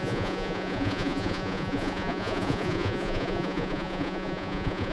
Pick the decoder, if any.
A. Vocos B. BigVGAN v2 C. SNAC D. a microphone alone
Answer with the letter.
A